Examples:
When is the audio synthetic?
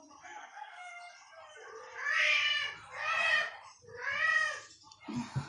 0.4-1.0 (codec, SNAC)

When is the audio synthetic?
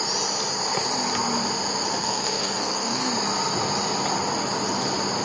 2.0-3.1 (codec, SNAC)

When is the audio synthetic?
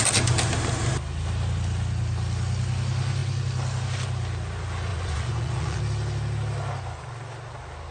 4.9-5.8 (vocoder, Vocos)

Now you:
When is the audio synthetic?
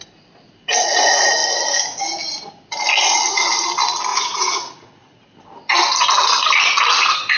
4.1-5.2 (vocoder, Vocos)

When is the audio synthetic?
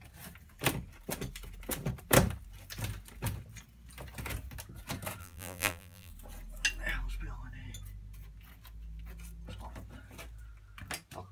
5.2-6.1 (vocoder, BigVGAN v2)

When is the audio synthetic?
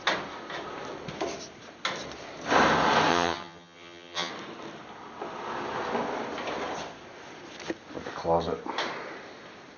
3.1-4.3 (vocoder, HiFi-GAN)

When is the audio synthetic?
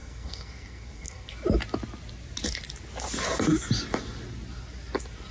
0.0-1.3 (codec, SNAC)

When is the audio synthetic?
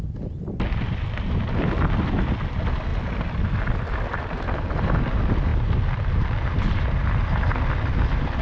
none